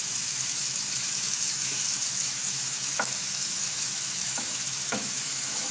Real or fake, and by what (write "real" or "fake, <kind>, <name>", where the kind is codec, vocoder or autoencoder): fake, autoencoder, DAC-VAE